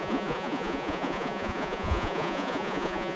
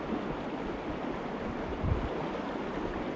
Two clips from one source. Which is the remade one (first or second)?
first